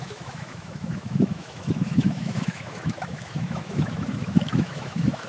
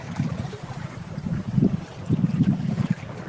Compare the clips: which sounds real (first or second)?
second